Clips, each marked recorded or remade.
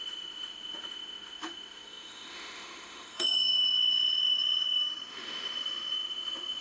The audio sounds remade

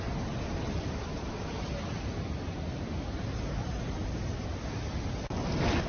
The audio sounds recorded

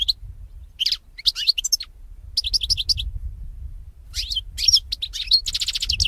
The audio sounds recorded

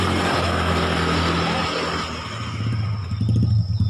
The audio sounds recorded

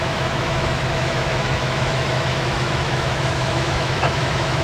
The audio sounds remade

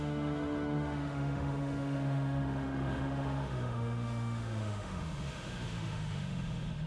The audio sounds remade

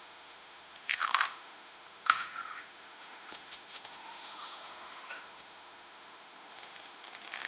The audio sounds remade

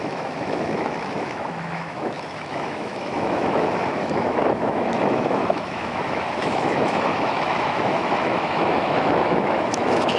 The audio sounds remade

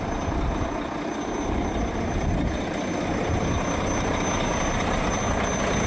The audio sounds recorded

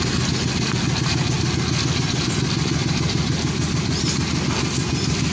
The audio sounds recorded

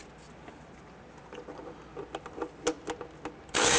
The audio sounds recorded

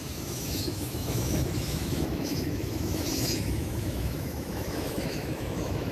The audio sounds remade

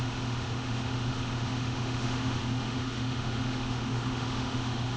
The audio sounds remade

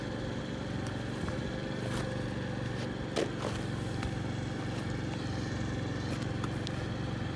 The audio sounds recorded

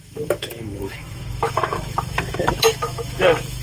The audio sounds remade